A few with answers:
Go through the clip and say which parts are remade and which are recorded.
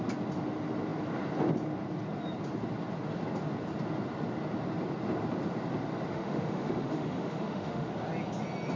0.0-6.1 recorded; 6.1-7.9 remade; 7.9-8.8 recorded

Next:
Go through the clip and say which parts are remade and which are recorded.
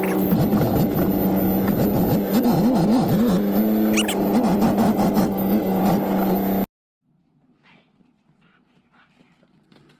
0.0-4.9 recorded; 4.9-5.8 remade; 5.8-10.0 recorded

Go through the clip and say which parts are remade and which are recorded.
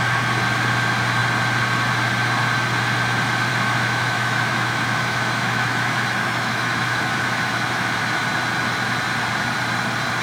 0.0-3.5 recorded; 3.5-8.0 remade; 8.0-10.2 recorded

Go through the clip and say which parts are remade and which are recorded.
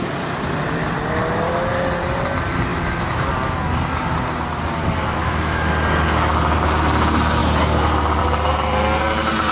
0.0-2.7 recorded; 2.7-3.3 remade; 3.3-5.2 recorded; 5.2-5.7 remade; 5.7-9.5 recorded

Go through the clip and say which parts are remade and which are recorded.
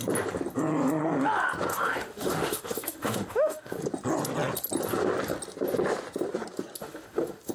0.0-1.7 recorded; 1.7-3.8 remade; 3.8-6.8 recorded; 6.8-7.5 remade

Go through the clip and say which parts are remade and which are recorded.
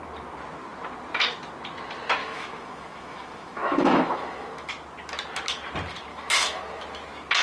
0.0-2.2 recorded; 2.2-4.7 remade; 4.7-6.1 recorded; 6.1-6.6 remade; 6.6-7.4 recorded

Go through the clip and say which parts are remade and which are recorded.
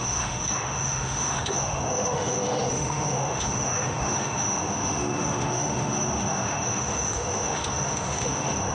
0.0-8.7 remade